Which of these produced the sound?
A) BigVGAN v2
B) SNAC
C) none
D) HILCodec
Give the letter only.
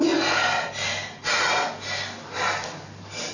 C